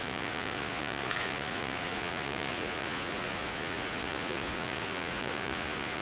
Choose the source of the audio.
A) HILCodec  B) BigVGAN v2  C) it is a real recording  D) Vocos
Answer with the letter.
D